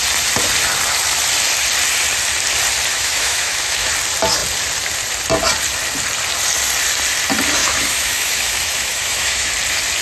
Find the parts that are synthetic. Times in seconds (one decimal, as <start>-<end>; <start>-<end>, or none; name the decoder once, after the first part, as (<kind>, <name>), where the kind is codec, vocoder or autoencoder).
2.9-3.9 (autoencoder, DAC-VAE); 7.6-9.5

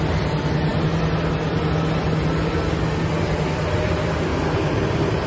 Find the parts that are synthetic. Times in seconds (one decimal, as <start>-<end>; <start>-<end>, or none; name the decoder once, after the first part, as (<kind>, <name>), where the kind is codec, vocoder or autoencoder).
4.3-5.3 (vocoder, BigVGAN v2)